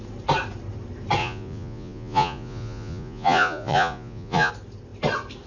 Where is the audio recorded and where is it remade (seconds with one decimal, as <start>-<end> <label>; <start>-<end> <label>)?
0.0-1.2 recorded; 1.2-4.5 remade; 4.5-5.5 recorded